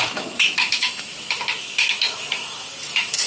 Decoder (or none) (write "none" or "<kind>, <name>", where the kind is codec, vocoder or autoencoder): autoencoder, DAC-VAE